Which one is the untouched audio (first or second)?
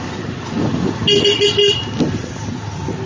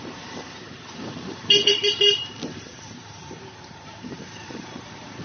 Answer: first